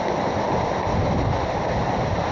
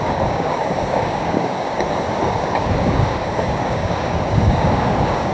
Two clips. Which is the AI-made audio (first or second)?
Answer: second